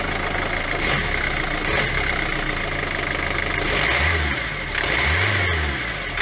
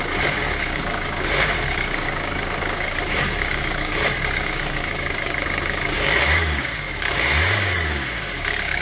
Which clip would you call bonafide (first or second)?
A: first